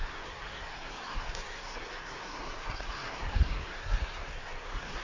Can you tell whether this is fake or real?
fake